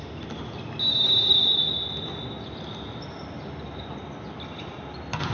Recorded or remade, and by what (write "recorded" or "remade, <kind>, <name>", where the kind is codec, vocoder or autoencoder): recorded